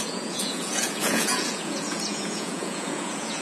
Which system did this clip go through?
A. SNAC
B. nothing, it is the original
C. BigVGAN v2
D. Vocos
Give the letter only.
D